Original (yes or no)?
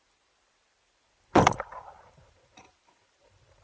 no